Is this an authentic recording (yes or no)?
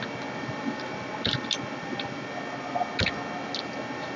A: yes